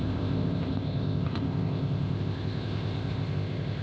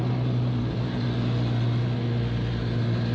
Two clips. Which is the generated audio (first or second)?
first